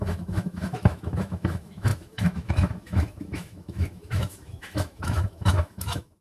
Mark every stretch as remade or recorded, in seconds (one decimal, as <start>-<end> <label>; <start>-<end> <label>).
0.0-6.2 remade